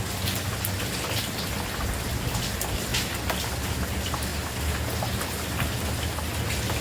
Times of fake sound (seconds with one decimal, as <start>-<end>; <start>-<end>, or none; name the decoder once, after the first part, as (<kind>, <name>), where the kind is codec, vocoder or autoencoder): none